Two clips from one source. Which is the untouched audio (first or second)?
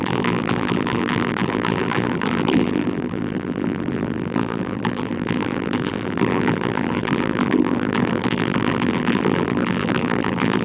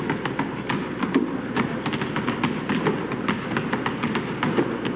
second